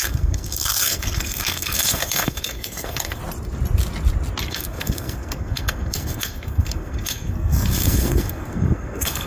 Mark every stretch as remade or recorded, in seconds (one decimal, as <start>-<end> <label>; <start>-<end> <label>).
0.0-3.2 remade; 3.2-4.5 recorded; 4.5-9.3 remade